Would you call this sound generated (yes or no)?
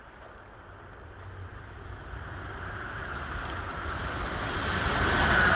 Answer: no